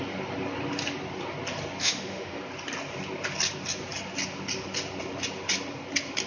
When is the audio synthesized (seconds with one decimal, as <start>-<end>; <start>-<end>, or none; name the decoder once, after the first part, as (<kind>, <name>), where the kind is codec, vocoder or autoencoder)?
1.8-2.4 (autoencoder, DAC-VAE)